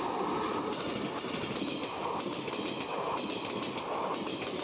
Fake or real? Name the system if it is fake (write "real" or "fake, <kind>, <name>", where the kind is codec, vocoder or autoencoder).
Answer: real